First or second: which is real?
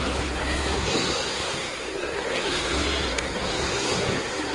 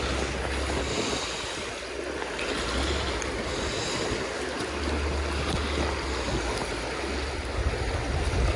second